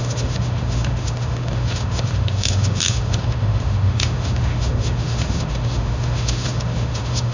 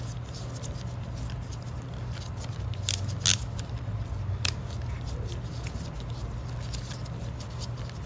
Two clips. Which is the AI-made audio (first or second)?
first